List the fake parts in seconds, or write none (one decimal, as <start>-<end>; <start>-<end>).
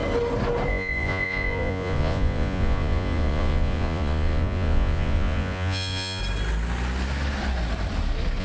0.7-6.2